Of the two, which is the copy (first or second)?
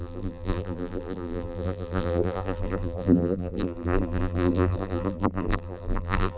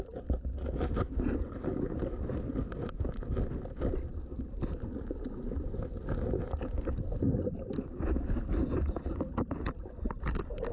first